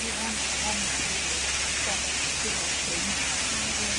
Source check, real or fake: real